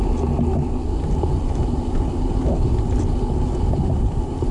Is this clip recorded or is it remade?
recorded